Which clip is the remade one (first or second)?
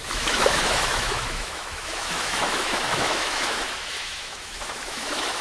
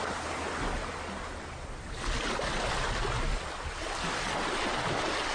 first